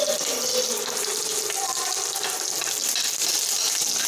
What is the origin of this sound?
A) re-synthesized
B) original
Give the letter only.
B